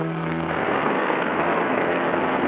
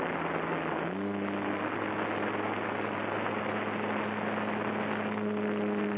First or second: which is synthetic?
first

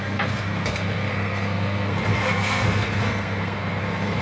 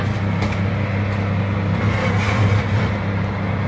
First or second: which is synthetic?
first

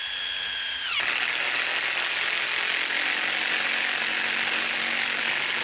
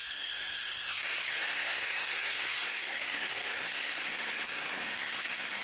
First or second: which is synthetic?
second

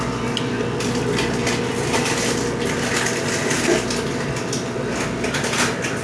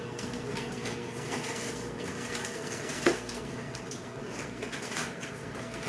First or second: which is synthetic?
second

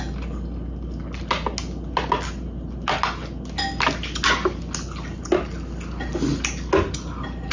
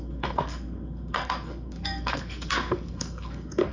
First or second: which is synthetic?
second